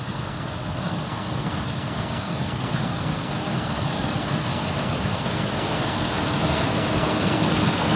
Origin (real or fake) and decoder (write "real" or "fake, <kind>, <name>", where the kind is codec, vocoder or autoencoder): fake, codec, SNAC